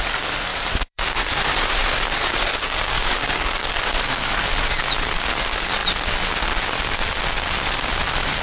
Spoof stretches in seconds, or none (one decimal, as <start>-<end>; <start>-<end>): 0.5-1.3; 2.5-4.5